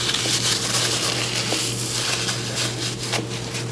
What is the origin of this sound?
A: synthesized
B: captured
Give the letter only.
B